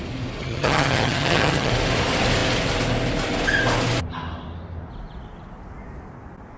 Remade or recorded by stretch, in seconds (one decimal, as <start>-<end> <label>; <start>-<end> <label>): 0.0-0.4 recorded; 0.4-1.7 remade; 1.7-6.6 recorded